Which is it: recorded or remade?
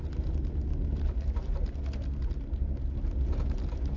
recorded